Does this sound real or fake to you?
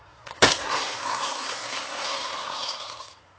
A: fake